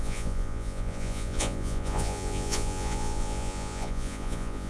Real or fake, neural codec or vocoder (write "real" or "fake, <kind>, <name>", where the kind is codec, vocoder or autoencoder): fake, vocoder, Vocos